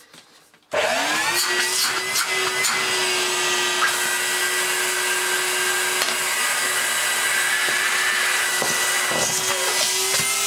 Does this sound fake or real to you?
real